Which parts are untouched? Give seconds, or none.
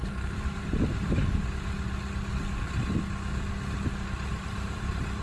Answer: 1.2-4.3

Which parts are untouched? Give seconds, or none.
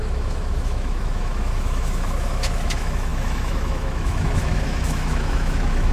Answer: none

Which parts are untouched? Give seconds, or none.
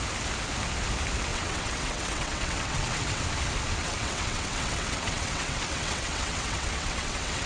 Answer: 0.0-1.3; 3.2-3.8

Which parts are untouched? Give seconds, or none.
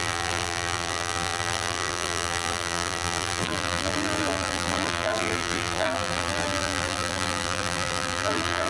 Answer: none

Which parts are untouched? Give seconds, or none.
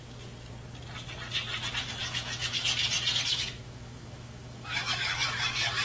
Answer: 0.0-2.0; 2.6-3.3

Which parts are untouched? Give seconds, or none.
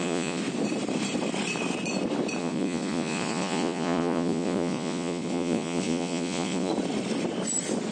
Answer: 0.4-2.4; 6.7-7.9